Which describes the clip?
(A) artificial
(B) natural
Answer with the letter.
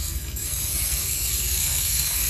A